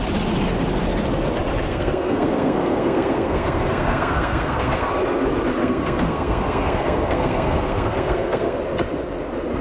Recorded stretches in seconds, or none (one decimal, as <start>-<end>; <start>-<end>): 0.0-1.7; 4.9-5.6; 8.6-9.6